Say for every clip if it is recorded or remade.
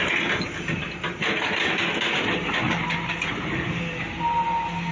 recorded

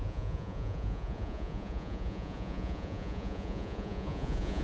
remade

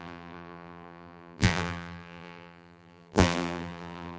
remade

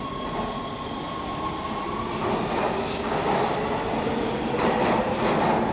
recorded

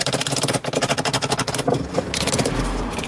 recorded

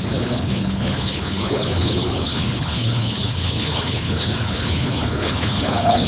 remade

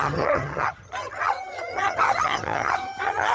remade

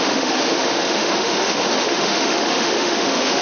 remade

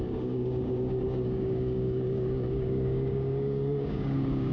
remade